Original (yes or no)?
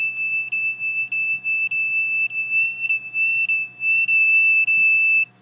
yes